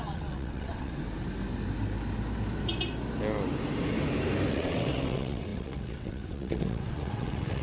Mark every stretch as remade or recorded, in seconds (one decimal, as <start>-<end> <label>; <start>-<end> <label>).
0.0-1.0 remade; 1.0-4.5 recorded; 4.5-7.6 remade